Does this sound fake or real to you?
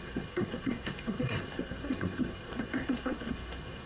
fake